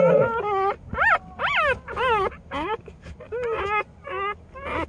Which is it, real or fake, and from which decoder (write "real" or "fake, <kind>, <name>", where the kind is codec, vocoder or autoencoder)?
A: real